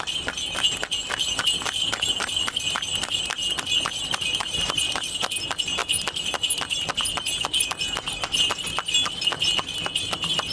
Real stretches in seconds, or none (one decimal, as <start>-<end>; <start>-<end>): 0.0-10.5